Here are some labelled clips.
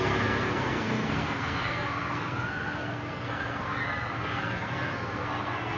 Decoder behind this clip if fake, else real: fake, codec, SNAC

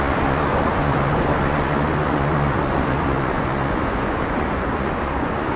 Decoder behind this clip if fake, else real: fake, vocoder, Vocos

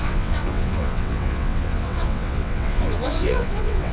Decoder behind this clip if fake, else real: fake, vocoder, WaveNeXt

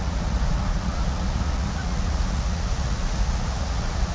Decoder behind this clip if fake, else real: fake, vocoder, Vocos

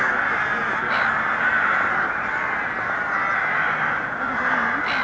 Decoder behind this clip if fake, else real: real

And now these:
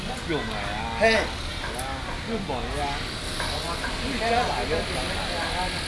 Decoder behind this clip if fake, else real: real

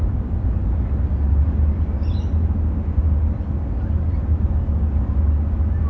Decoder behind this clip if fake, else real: real